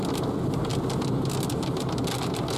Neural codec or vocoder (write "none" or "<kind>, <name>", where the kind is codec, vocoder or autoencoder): none